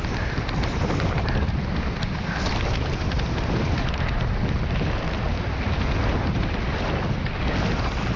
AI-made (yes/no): no